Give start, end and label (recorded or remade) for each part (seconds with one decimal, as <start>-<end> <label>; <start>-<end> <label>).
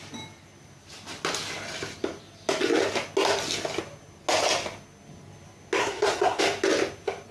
0.0-5.8 recorded; 5.8-6.4 remade; 6.4-7.3 recorded